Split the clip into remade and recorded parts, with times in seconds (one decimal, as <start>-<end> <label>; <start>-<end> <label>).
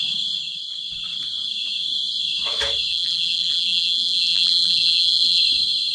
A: 0.0-2.9 recorded; 2.9-5.4 remade; 5.4-5.9 recorded